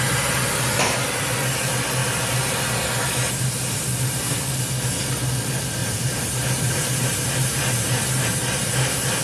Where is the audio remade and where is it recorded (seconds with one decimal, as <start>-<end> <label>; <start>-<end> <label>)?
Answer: 0.0-5.8 recorded; 5.8-8.3 remade; 8.3-9.2 recorded